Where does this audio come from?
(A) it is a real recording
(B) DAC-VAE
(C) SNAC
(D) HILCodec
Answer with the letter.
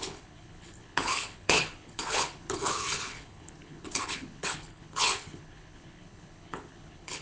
D